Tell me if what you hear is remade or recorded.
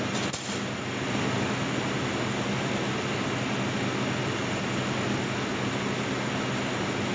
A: recorded